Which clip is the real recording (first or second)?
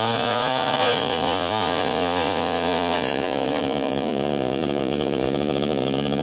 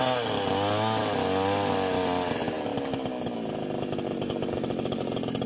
second